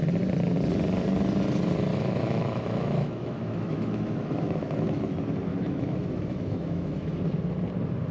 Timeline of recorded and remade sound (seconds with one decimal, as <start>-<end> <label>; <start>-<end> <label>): 0.0-1.9 recorded; 1.9-5.0 remade; 5.0-5.5 recorded; 5.5-7.2 remade; 7.2-8.1 recorded